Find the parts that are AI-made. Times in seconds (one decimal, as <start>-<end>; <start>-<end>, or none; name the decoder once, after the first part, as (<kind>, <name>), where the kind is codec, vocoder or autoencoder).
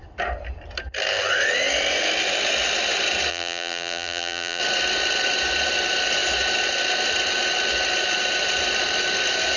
3.3-4.6 (vocoder, BigVGAN v2)